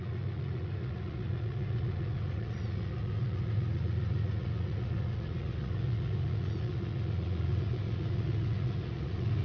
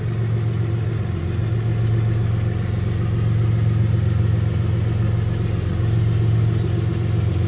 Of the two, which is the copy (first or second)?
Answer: first